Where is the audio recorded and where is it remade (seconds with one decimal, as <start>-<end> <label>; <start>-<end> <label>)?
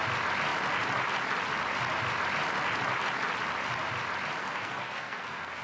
0.0-4.4 recorded; 4.4-5.6 remade